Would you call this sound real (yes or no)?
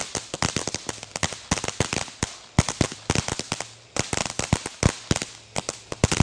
yes